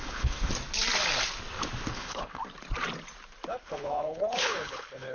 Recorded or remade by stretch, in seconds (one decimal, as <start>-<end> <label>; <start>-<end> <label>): 0.0-0.5 remade; 0.5-1.9 recorded; 1.9-2.4 remade; 2.4-3.5 recorded; 3.5-5.1 remade